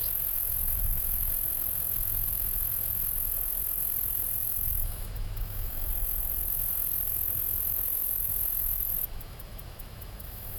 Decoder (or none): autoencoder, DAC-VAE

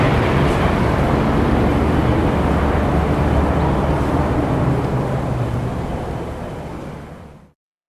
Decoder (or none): vocoder, BigVGAN v2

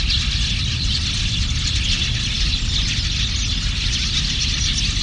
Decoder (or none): none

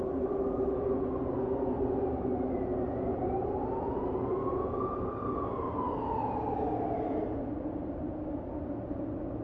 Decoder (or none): none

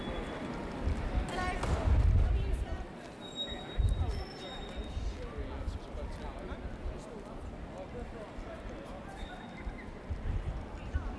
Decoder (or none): none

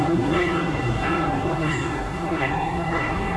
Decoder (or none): codec, SNAC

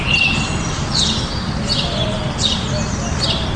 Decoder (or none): none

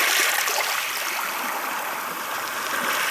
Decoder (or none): vocoder, BigVGAN v2